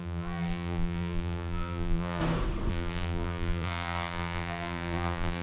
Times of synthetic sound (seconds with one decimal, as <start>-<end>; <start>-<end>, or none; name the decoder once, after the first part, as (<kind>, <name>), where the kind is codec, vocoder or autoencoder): 0.0-2.2 (vocoder, BigVGAN v2); 2.7-5.4